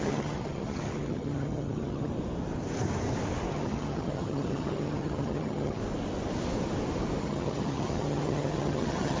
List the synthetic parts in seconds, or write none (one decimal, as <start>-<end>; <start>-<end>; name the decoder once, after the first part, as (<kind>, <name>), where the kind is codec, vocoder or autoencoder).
0.0-2.1 (vocoder, HiFi-GAN); 3.5-5.8; 7.2-9.2